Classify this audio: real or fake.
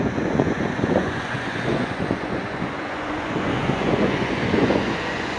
fake